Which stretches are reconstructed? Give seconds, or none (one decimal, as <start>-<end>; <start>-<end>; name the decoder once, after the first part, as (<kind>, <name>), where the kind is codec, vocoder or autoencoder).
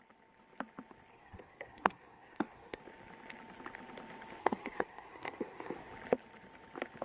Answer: 1.1-2.8 (codec, SNAC); 4.4-5.9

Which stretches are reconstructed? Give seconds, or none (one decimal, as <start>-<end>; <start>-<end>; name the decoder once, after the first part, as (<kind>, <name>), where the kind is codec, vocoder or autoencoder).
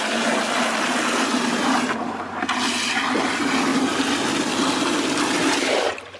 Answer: none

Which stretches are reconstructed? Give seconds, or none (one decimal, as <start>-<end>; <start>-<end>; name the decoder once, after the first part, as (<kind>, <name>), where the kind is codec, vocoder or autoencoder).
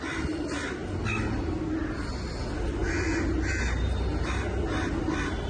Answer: none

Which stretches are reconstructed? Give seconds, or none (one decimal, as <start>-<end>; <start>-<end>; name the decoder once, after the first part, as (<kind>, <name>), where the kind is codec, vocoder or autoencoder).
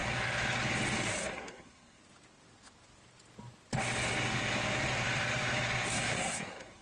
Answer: 1.3-2.0 (codec, SNAC); 5.9-6.8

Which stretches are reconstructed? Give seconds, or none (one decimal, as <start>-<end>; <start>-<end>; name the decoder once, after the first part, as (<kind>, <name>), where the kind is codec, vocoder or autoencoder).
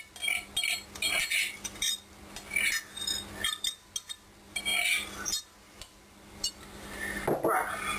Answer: none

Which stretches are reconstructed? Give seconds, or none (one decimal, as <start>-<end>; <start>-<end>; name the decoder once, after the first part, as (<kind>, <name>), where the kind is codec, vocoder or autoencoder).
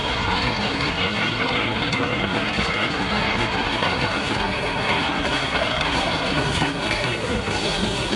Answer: 0.0-8.2 (codec, SNAC)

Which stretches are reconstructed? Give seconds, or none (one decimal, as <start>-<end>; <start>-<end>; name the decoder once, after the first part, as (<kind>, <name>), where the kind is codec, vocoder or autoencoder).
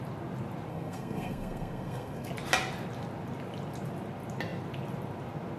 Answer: 0.7-2.3 (codec, SNAC)